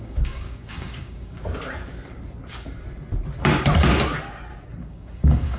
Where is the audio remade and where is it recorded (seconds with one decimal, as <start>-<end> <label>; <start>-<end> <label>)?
0.0-1.4 remade; 1.4-4.8 recorded; 4.8-5.6 remade